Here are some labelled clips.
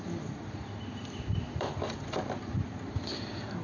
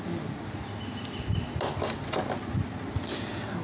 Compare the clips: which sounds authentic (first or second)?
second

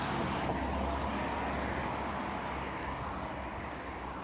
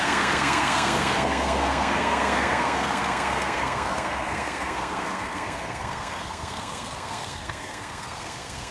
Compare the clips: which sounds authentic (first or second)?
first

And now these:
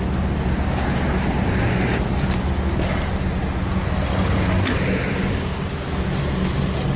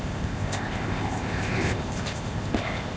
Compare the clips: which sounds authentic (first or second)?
first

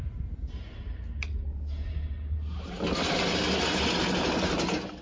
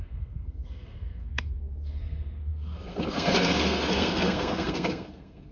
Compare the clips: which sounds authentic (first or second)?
first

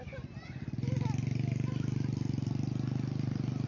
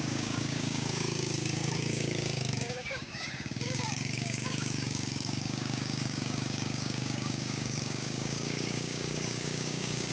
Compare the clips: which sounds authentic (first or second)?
first